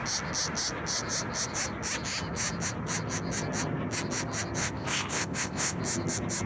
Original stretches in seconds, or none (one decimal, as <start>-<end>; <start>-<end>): 0.0-4.6; 5.8-6.5

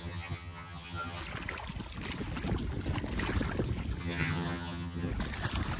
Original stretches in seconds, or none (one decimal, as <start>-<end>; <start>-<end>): 1.2-4.0; 5.1-5.8

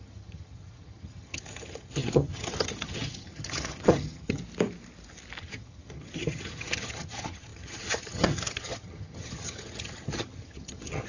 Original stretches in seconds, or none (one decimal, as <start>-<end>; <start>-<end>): 4.4-5.4